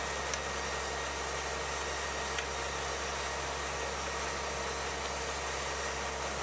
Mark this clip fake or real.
real